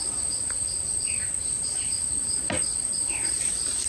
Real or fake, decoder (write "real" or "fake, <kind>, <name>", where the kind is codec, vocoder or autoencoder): real